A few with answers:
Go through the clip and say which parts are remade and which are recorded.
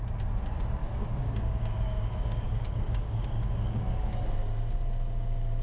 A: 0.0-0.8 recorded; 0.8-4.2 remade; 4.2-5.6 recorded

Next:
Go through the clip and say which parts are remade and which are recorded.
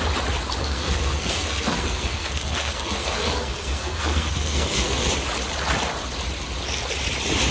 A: 0.0-0.6 recorded; 0.6-5.1 remade; 5.1-7.5 recorded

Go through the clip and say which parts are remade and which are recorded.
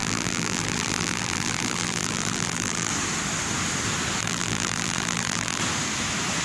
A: 0.0-2.9 remade; 2.9-4.2 recorded; 4.2-5.6 remade; 5.6-6.4 recorded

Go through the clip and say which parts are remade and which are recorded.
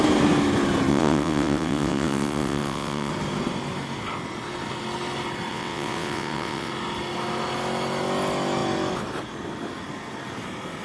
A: 0.0-0.9 recorded; 0.9-3.1 remade; 3.1-5.5 recorded; 5.5-6.7 remade; 6.7-10.8 recorded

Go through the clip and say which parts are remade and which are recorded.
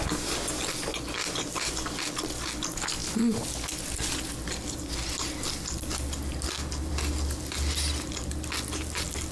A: 0.0-9.3 recorded